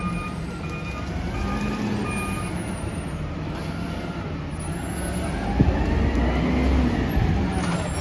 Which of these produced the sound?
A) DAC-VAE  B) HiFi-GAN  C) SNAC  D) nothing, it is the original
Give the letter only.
D